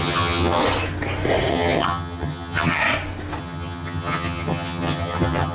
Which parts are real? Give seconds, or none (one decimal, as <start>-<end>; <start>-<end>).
0.6-1.5; 2.8-3.4